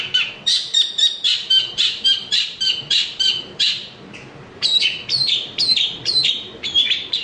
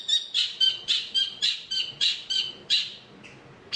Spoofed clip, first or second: first